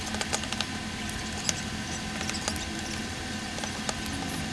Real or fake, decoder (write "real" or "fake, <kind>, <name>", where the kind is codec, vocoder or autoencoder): real